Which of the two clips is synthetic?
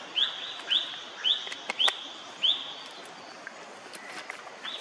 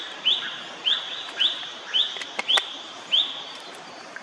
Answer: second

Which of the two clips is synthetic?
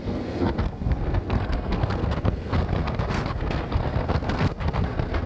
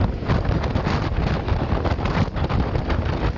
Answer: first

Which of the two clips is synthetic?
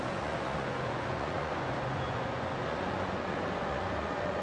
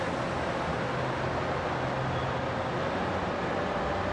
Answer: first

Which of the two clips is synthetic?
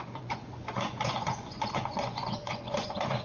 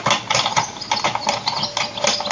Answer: first